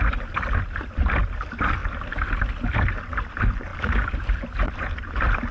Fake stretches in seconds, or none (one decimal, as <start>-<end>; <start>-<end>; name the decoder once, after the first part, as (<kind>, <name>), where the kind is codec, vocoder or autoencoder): none